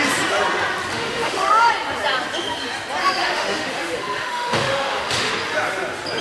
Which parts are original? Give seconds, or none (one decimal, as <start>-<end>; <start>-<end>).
0.0-0.9; 1.7-3.0; 5.3-6.2